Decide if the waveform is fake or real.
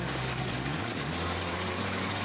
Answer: fake